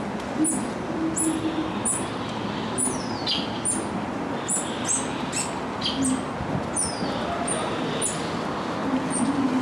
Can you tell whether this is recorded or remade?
recorded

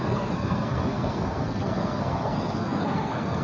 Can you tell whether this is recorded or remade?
remade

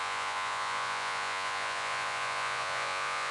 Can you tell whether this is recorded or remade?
remade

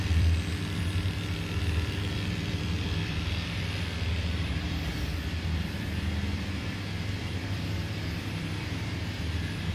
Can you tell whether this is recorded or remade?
remade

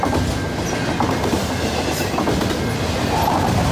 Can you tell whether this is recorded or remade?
recorded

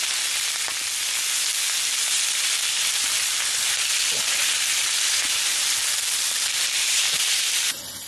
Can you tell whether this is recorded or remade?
recorded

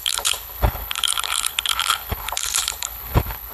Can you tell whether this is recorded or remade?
remade